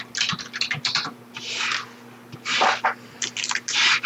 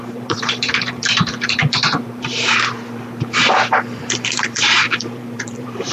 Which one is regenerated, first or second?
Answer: second